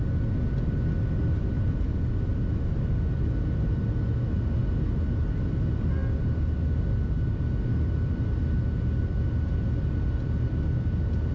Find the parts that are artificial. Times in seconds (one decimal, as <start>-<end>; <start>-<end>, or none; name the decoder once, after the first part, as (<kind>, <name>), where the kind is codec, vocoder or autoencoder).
none